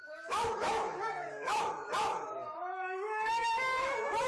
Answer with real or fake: fake